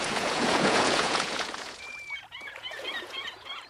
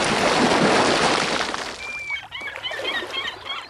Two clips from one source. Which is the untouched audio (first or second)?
second